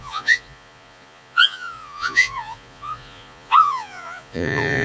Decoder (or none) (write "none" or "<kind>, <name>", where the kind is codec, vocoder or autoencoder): vocoder, Vocos